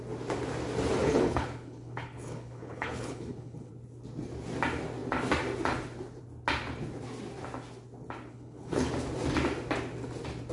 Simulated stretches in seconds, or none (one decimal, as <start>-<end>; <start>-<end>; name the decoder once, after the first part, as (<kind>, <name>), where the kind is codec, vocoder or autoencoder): 1.0-3.7 (codec, HILCodec); 8.3-8.9